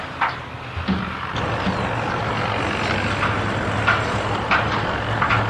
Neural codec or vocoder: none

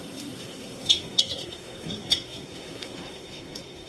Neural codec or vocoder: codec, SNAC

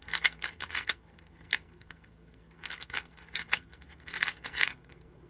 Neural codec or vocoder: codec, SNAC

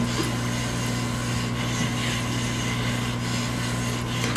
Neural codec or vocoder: none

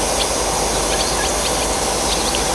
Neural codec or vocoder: none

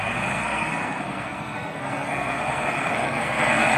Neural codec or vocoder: codec, SNAC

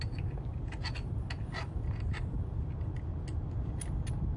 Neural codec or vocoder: none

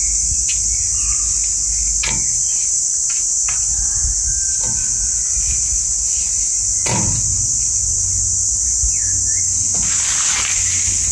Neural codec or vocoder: none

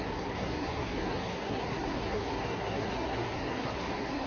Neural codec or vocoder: codec, SNAC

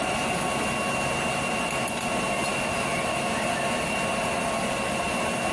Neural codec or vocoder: none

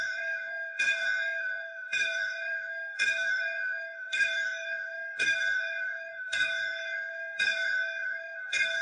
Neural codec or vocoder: codec, SNAC